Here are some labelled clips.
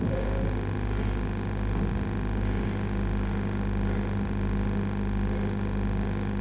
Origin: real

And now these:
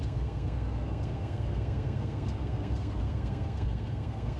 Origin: fake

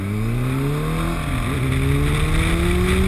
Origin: real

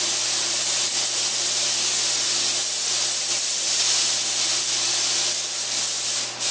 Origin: real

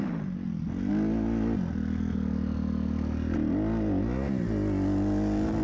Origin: real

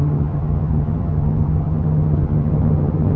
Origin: fake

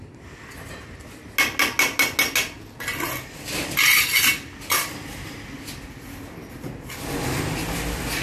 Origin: real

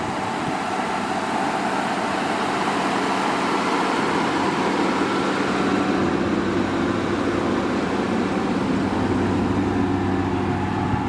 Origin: real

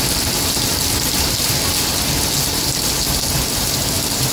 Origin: real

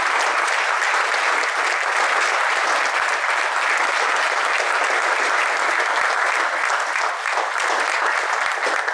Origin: real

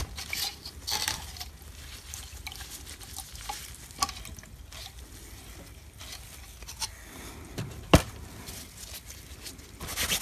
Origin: real